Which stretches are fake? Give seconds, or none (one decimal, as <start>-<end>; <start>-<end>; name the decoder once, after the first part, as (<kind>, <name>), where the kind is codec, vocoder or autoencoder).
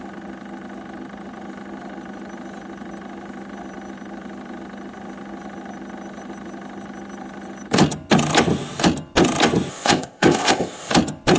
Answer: 9.7-10.9 (codec, ZipCodec)